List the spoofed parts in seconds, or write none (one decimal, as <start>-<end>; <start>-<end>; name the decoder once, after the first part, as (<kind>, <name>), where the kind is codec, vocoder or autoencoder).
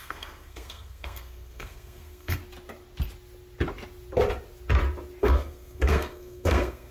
0.0-2.4 (codec, SNAC); 5.2-6.9